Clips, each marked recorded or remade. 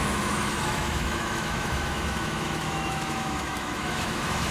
remade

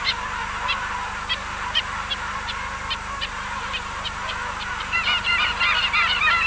remade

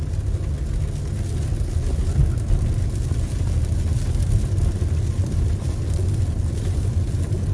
recorded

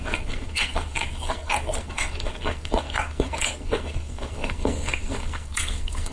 remade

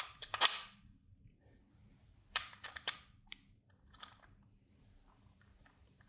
remade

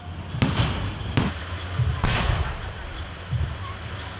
recorded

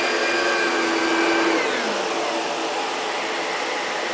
recorded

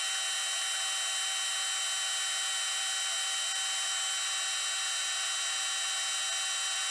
recorded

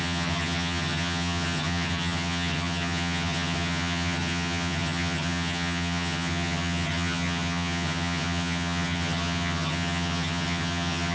remade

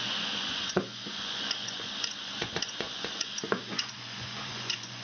remade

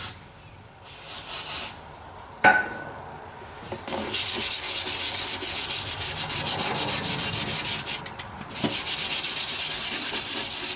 recorded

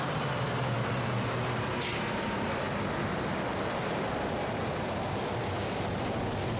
recorded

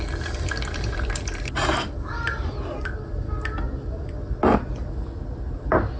recorded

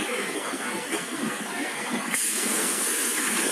remade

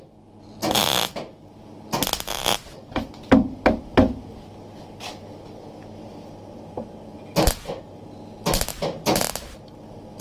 recorded